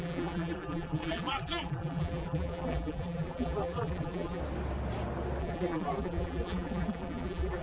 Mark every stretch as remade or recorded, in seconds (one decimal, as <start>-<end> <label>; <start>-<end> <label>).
0.0-4.4 remade; 4.4-5.4 recorded; 5.4-7.6 remade